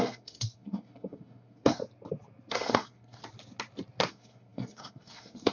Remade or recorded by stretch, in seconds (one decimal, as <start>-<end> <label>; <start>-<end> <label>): 0.0-1.8 remade; 1.8-2.5 recorded; 2.5-3.2 remade; 3.2-4.1 recorded; 4.1-5.5 remade